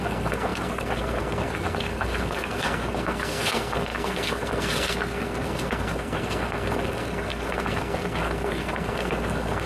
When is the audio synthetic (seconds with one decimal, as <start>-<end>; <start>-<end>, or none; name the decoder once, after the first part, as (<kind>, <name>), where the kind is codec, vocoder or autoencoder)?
0.0-9.7 (codec, SNAC)